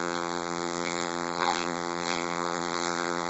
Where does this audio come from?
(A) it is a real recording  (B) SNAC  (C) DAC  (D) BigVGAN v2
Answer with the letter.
D